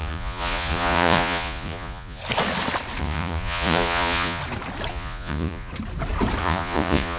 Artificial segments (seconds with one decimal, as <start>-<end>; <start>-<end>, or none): 0.0-2.2; 3.0-4.4; 4.9-5.7; 6.4-7.2